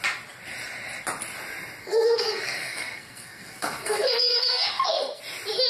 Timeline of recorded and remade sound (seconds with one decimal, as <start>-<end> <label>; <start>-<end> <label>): 0.0-1.8 recorded; 1.8-5.2 remade; 5.2-5.7 recorded